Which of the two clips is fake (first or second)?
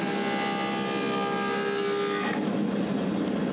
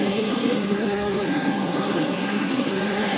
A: second